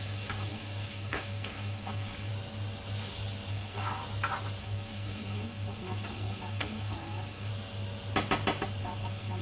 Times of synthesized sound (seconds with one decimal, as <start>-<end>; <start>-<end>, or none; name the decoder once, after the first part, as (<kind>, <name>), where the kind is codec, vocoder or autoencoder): 0.0-2.3 (codec, SNAC); 3.5-4.0; 4.6-7.5; 8.8-9.4